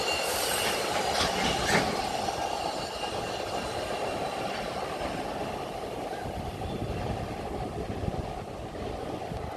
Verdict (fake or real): real